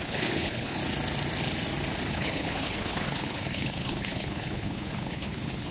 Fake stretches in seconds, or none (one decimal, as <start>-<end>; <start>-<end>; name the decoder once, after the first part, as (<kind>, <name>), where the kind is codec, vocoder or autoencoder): 0.0-0.8 (codec, HILCodec); 2.1-5.7